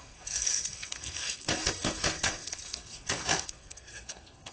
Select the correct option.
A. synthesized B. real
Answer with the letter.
A